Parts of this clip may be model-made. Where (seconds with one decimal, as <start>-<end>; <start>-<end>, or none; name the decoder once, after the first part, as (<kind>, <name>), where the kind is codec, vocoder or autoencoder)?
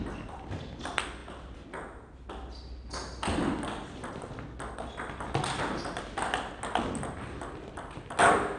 none